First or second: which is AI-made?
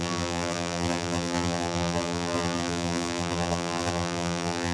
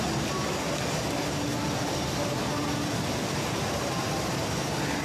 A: first